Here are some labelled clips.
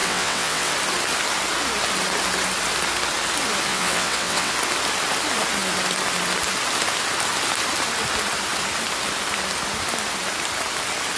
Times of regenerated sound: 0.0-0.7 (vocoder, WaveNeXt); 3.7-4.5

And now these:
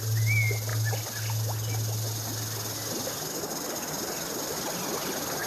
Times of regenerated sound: none

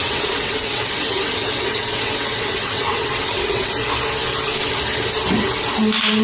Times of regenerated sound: 0.0-3.7 (vocoder, WaveNeXt)